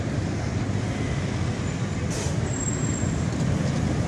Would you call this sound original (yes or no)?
yes